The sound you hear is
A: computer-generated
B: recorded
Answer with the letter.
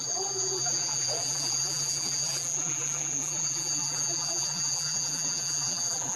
A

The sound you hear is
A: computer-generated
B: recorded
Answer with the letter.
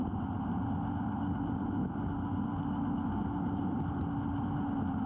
B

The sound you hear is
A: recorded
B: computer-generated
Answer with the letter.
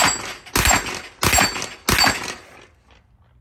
A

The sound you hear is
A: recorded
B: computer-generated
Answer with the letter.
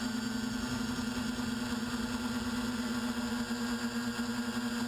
A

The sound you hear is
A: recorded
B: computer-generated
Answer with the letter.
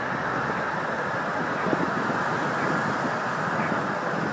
A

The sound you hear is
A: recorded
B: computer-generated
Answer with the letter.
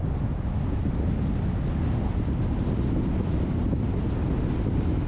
A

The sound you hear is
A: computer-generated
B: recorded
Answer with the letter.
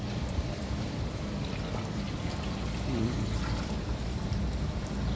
A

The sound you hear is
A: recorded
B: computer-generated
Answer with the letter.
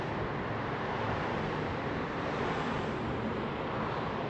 B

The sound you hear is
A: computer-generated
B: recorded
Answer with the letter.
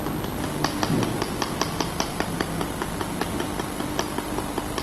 B